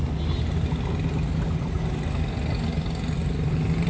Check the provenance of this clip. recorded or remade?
recorded